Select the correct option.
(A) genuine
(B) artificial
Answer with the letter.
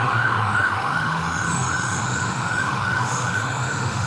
B